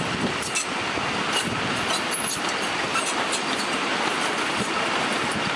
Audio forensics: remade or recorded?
recorded